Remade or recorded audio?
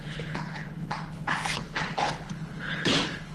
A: remade